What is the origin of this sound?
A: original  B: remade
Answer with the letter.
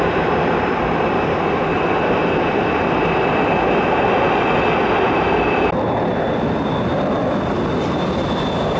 B